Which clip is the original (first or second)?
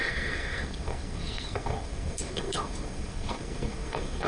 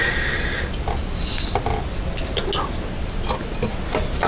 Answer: second